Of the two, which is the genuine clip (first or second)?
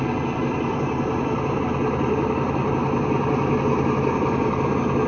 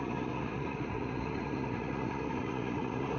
first